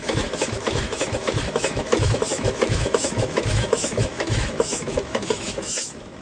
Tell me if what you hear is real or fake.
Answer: fake